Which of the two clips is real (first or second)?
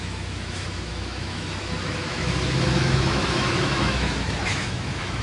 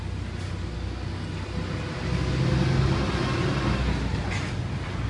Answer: second